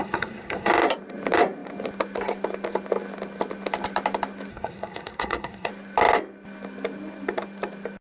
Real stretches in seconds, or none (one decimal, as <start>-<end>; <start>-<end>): 0.7-4.5; 5.7-8.0